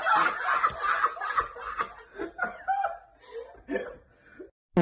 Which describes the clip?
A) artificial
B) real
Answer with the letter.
B